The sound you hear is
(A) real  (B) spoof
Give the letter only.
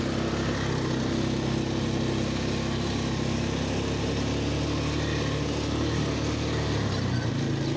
A